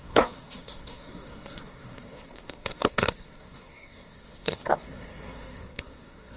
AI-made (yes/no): yes